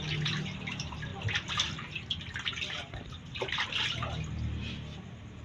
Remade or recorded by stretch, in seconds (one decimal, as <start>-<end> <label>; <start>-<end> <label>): 0.0-5.4 recorded